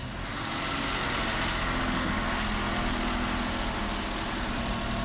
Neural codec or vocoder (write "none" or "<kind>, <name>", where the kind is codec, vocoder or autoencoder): none